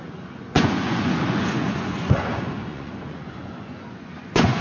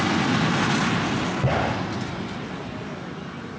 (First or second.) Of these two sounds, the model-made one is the first